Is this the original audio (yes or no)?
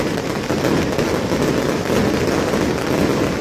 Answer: yes